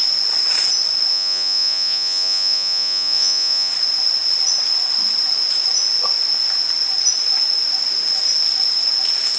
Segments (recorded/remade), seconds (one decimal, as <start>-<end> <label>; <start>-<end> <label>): 0.0-1.1 recorded; 1.1-3.7 remade; 3.7-9.4 recorded